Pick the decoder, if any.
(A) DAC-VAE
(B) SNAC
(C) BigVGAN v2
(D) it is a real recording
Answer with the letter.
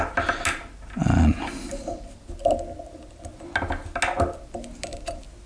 D